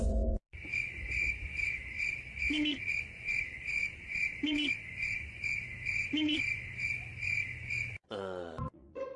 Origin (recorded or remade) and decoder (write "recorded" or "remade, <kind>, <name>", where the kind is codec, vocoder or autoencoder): remade, vocoder, Vocos